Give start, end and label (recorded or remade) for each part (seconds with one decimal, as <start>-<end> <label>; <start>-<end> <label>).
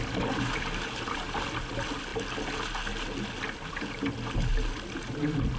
0.0-5.6 recorded